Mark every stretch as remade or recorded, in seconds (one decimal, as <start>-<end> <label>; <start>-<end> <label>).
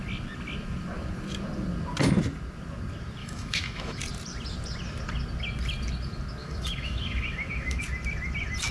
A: 0.0-3.2 recorded; 3.2-4.0 remade; 4.0-6.4 recorded; 6.4-7.8 remade; 7.8-8.7 recorded